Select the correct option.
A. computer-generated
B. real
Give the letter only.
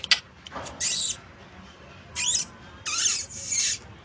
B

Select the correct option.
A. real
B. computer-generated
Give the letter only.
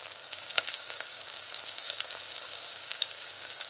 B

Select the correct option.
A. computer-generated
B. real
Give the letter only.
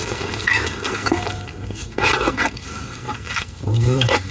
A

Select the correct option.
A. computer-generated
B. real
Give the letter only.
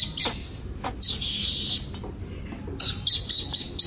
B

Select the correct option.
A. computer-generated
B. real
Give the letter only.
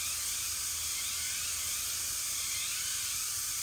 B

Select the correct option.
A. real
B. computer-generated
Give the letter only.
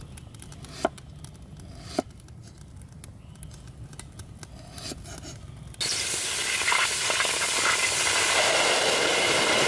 A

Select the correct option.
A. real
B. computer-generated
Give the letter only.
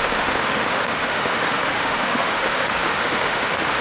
B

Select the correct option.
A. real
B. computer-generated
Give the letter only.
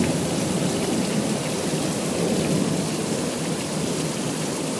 A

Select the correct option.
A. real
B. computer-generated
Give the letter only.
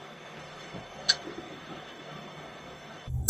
B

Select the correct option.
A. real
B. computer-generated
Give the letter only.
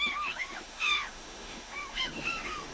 B